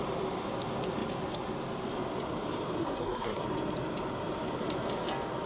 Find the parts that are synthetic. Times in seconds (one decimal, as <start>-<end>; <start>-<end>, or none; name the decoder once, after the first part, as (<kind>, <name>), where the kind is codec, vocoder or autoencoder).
2.8-3.4 (codec, SNAC)